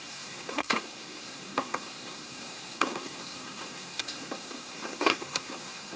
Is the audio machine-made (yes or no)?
yes